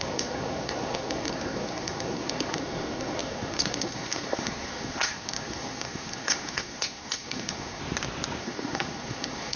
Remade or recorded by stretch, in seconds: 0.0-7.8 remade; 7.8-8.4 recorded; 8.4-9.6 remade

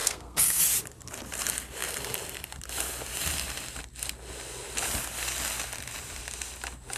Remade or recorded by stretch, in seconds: 0.0-0.6 remade; 0.6-7.0 recorded

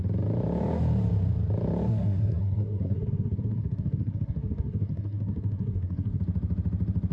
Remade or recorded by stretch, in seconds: 0.0-1.9 recorded; 1.9-6.2 remade; 6.2-7.1 recorded

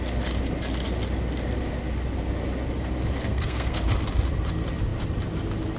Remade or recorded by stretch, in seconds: 0.0-3.3 recorded; 3.3-3.8 remade; 3.8-5.8 recorded